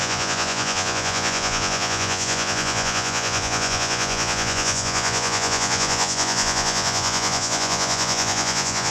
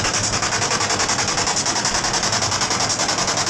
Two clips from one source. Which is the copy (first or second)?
first